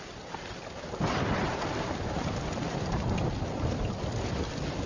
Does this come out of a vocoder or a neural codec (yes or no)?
yes